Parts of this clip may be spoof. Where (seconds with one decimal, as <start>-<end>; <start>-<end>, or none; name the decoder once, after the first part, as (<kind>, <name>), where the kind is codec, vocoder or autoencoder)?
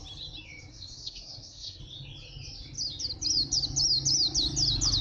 0.7-1.8 (codec, SNAC)